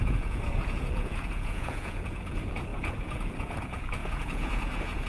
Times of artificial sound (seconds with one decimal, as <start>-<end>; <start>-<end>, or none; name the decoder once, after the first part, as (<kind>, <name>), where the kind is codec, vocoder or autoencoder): 0.0-5.1 (vocoder, Vocos)